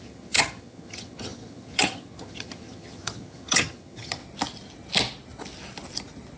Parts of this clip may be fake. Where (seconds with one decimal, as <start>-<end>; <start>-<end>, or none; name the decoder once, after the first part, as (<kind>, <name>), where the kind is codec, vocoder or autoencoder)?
0.0-4.2 (vocoder, HiFi-GAN)